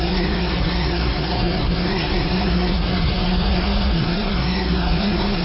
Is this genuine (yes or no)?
no